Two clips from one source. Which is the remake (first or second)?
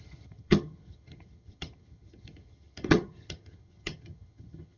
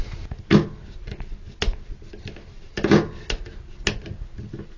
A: first